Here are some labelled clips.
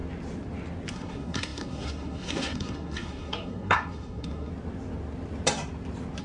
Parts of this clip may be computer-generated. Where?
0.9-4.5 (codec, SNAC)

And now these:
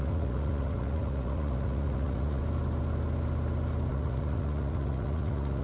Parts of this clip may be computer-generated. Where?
0.0-2.4 (vocoder, Vocos); 3.9-5.6

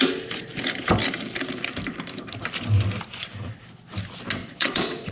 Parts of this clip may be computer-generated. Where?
4.4-5.1 (vocoder, Vocos)

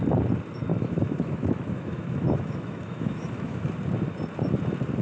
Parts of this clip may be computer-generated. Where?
0.7-3.7 (autoencoder, DAC-VAE)